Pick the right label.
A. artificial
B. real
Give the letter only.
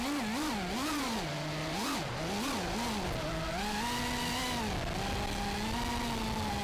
B